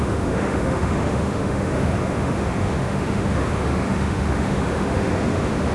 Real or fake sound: fake